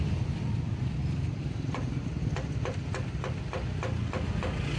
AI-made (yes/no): no